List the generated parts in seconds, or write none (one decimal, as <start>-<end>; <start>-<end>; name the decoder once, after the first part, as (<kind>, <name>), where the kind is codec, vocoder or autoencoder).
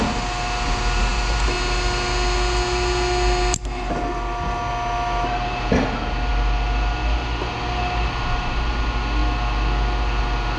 none